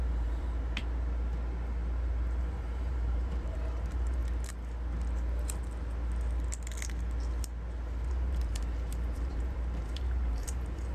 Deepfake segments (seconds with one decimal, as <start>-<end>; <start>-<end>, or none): 0.0-0.8; 2.4-4.2; 8.1-10.9